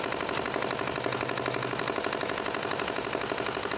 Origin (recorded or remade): recorded